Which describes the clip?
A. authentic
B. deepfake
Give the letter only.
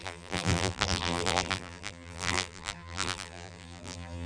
B